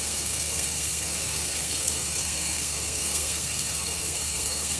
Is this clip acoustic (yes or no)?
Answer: no